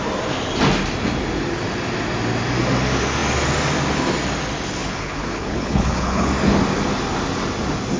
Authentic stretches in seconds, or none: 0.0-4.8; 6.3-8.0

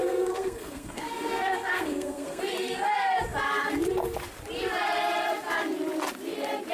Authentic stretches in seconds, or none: 2.4-6.7

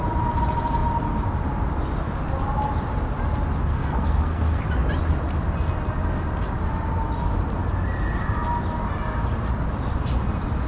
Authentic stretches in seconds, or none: 0.0-3.6; 4.6-10.7

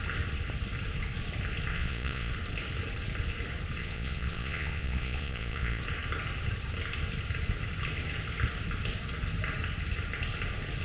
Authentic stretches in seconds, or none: 0.0-1.7; 2.3-3.8; 5.8-10.8

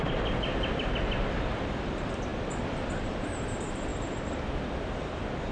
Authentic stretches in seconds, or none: 0.5-1.6; 2.3-3.0

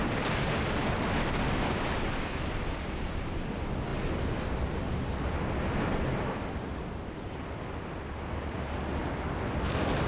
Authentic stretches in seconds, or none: 0.0-10.1

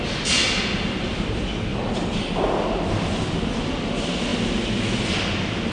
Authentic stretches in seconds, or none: 0.0-5.7